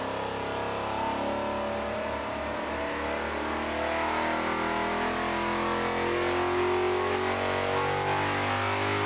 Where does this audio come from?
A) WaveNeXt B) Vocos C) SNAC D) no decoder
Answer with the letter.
D